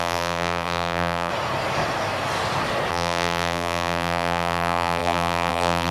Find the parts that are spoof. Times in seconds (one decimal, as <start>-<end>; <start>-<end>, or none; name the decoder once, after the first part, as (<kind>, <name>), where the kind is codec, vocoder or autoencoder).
0.0-1.3 (vocoder, BigVGAN v2); 2.9-5.9